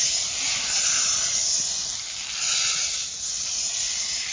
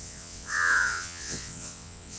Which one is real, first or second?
first